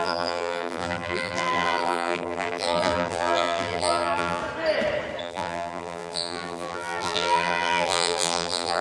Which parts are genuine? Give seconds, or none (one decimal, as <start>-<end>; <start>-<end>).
4.4-5.2